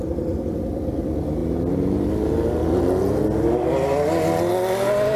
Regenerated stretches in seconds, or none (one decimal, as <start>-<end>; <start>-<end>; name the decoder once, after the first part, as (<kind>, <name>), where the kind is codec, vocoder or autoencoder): none